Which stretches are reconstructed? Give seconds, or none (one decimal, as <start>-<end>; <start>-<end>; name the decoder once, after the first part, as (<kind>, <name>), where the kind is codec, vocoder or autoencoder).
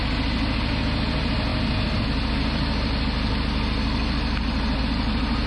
none